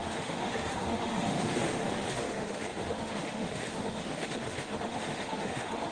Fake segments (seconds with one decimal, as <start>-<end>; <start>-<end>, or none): 0.0-5.9